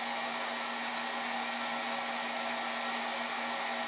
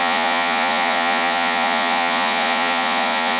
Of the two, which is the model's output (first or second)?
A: second